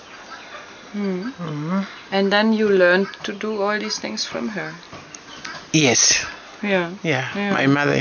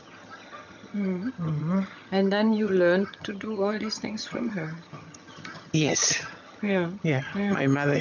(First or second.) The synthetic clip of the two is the second